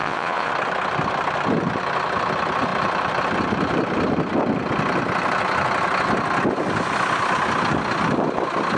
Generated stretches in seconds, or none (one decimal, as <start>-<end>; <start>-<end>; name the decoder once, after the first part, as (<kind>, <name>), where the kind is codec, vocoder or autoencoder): 0.0-0.5 (vocoder, Vocos)